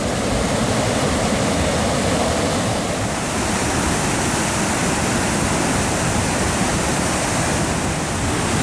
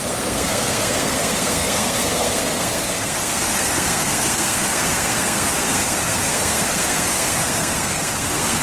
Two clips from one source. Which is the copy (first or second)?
second